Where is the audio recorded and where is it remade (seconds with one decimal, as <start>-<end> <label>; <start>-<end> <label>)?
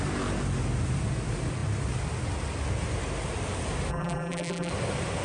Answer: 0.0-3.9 recorded; 3.9-4.7 remade; 4.7-5.2 recorded